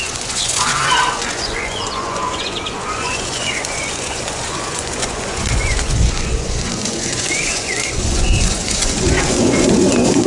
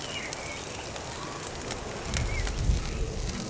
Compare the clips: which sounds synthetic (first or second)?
first